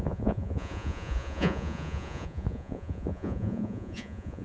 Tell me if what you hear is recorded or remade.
remade